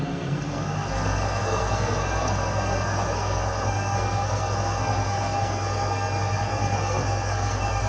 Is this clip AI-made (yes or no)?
yes